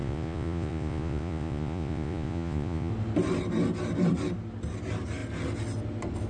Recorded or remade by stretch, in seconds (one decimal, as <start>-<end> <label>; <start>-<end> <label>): 0.0-2.9 remade; 2.9-6.3 recorded